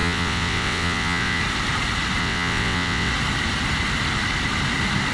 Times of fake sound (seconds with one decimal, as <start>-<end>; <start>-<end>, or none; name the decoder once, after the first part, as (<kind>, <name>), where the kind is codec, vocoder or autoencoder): 0.0-1.4 (vocoder, WaveNeXt); 2.2-3.1